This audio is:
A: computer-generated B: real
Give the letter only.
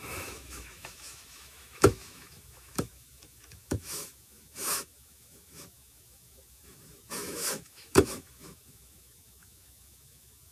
A